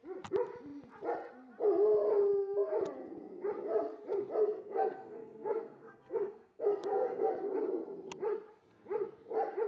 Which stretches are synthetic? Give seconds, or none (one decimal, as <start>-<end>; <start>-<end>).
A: 4.4-7.3